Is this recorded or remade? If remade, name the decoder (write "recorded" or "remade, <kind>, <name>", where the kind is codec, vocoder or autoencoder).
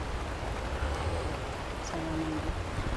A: recorded